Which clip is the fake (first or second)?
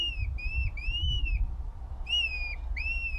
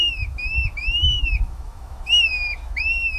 second